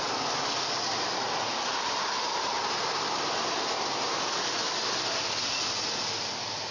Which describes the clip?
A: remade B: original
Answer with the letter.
B